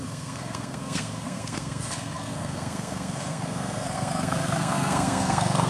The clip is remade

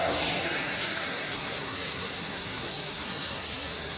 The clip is remade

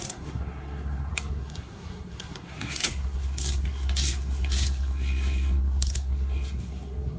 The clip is remade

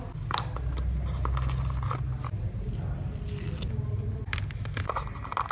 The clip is recorded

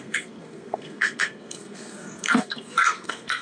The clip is remade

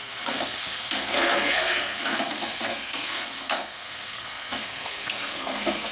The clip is remade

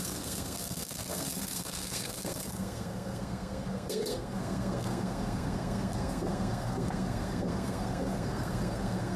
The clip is remade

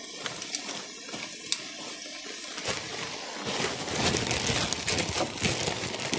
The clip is recorded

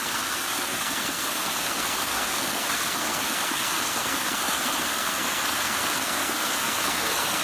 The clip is remade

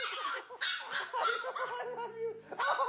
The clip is recorded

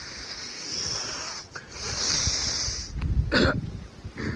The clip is recorded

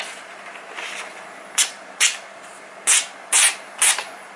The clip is recorded